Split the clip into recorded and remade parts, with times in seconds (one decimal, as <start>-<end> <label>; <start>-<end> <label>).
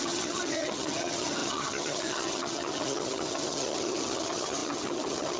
0.0-5.4 remade